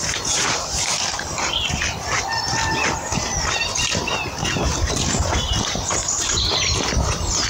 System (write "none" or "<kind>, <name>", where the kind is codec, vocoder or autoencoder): vocoder, BigVGAN v2